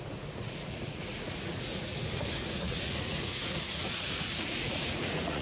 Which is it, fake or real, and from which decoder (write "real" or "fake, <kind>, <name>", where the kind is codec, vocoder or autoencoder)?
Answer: fake, vocoder, Vocos